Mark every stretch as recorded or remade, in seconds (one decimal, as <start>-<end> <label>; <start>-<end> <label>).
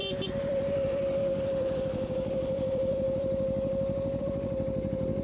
0.0-5.2 remade